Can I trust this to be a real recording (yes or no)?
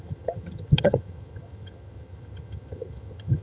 no